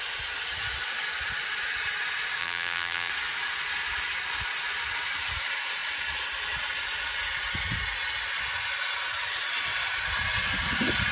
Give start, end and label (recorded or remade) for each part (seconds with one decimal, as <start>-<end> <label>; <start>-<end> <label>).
0.0-2.4 recorded; 2.4-3.1 remade; 3.1-11.1 recorded